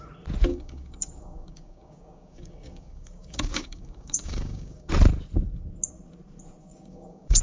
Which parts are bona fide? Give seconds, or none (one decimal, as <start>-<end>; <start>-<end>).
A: 0.0-0.5; 4.9-6.6